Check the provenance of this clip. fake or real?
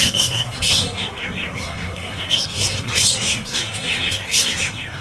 fake